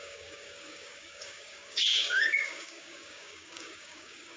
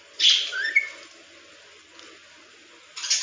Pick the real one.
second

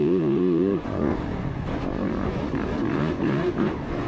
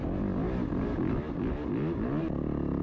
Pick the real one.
second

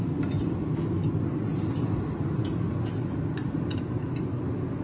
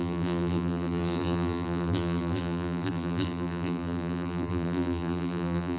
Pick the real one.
first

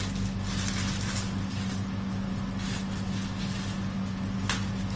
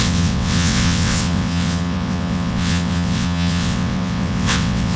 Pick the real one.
first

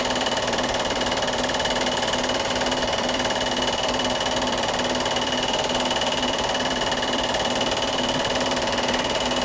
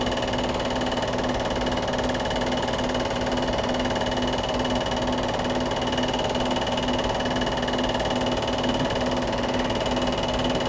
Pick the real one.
second